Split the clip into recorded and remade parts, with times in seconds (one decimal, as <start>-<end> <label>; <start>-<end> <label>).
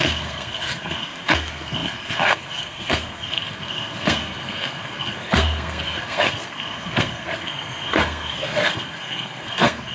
0.0-9.9 remade